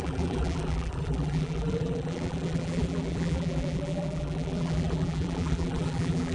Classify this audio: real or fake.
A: fake